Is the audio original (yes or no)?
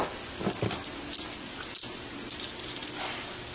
yes